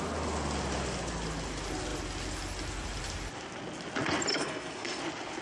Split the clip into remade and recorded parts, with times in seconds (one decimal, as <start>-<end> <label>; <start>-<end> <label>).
0.0-4.3 recorded; 4.3-5.0 remade; 5.0-5.4 recorded